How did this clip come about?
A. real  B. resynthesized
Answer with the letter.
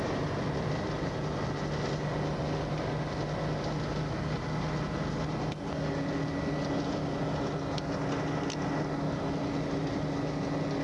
A